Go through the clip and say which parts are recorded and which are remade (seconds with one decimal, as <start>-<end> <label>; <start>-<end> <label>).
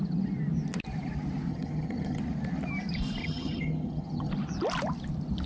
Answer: 0.0-1.5 recorded; 1.5-2.2 remade; 2.2-3.2 recorded; 3.2-4.3 remade; 4.3-5.5 recorded